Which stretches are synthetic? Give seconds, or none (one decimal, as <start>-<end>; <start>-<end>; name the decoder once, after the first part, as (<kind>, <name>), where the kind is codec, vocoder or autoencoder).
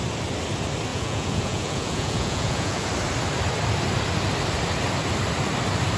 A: 0.9-2.9 (vocoder, Vocos)